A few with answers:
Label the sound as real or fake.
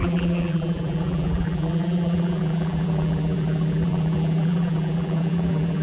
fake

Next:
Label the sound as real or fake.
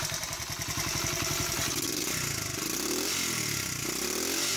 real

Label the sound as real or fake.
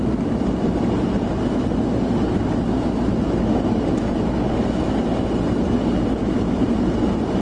real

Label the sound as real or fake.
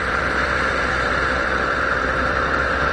fake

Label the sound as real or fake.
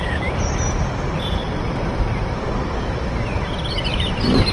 fake